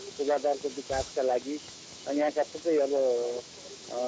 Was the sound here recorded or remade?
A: remade